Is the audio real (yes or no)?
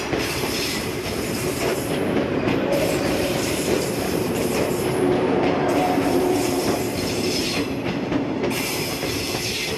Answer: no